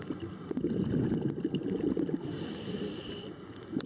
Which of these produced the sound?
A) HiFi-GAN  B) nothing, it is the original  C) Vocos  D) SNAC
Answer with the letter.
B